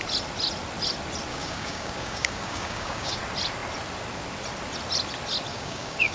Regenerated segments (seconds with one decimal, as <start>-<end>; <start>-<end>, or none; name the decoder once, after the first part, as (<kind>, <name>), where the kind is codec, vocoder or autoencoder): 1.3-3.2 (codec, DAC); 5.5-6.1